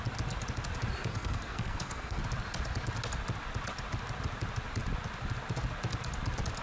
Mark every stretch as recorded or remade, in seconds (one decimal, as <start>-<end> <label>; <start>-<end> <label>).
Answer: 0.0-1.1 recorded; 1.1-2.2 remade; 2.2-6.6 recorded